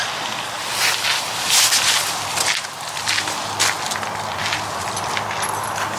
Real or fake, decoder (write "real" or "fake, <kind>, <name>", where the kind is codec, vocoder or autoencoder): real